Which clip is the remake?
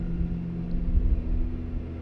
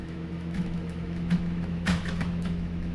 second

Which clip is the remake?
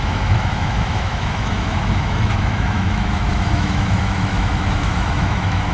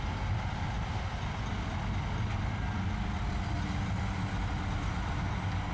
first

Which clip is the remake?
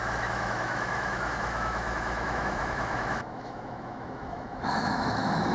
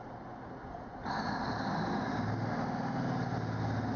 first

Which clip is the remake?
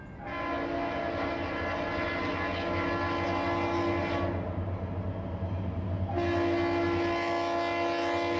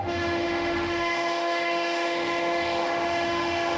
second